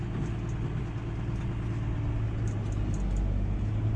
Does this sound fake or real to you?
real